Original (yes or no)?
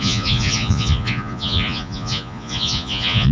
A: no